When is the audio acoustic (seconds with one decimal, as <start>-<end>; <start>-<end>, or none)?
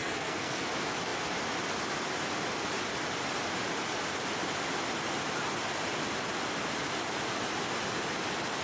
0.6-8.6